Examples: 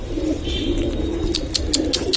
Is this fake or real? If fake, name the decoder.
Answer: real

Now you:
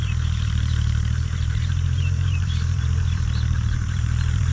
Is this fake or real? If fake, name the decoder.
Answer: fake, vocoder, BigVGAN v2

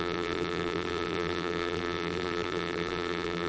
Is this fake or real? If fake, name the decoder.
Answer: fake, vocoder, BigVGAN v2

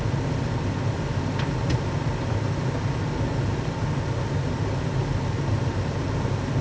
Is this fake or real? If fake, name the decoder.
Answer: real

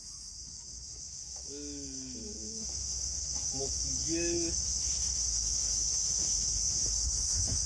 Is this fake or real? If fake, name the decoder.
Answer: fake, autoencoder, DAC-VAE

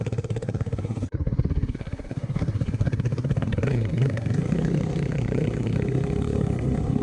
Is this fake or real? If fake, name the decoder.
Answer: fake, codec, SNAC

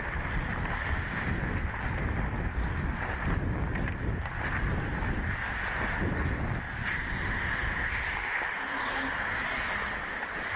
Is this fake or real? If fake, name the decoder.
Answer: real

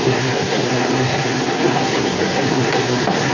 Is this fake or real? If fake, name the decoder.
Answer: fake, codec, SNAC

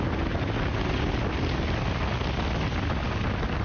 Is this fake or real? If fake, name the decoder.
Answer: real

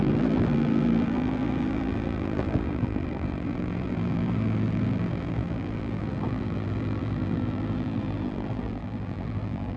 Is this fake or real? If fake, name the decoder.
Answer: fake, vocoder, BigVGAN v2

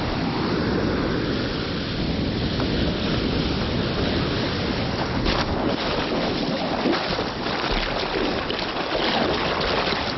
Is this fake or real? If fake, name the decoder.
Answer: real